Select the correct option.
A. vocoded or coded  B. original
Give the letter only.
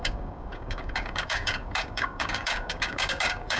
A